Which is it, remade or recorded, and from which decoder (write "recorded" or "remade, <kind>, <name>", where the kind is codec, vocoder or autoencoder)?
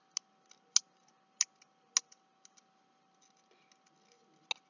recorded